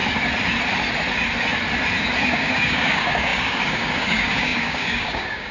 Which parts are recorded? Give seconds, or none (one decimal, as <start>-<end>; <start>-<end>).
0.0-2.2